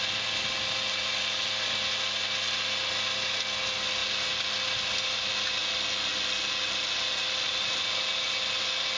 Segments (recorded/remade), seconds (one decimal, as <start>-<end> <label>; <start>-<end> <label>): 0.0-9.0 recorded